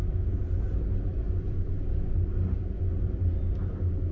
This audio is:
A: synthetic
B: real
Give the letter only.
B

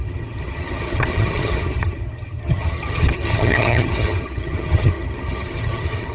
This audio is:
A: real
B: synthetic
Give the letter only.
B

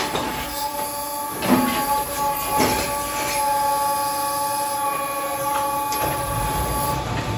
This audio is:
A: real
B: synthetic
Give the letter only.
A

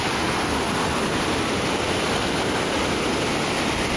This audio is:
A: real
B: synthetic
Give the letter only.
A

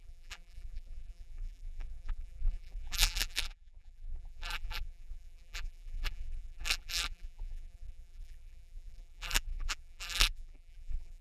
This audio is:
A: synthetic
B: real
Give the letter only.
A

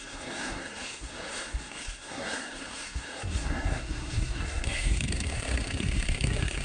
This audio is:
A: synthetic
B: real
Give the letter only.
A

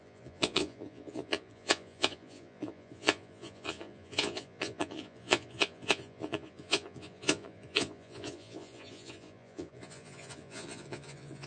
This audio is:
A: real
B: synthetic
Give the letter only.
B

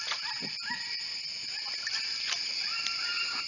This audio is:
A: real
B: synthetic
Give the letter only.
A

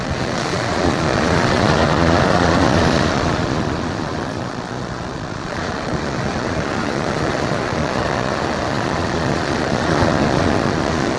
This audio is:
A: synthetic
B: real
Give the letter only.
A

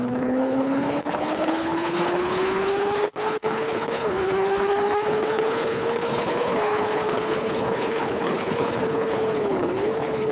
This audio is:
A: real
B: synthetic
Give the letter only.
B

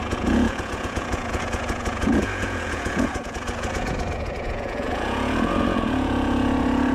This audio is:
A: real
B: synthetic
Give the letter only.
B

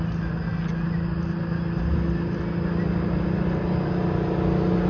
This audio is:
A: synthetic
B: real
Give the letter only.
B